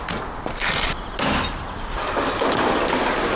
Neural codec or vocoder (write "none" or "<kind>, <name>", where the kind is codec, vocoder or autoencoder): none